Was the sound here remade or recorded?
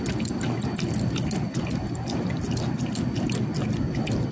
recorded